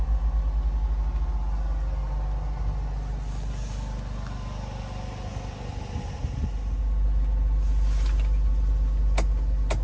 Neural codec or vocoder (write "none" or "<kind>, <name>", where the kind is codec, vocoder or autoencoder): none